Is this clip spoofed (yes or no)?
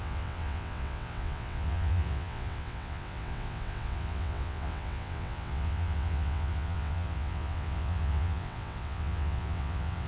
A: yes